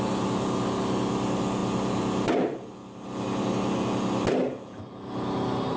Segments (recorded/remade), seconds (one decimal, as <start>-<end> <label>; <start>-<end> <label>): 0.0-5.8 recorded